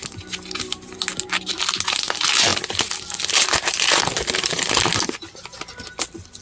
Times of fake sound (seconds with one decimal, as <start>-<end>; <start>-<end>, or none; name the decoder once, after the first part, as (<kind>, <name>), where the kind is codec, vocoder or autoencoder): none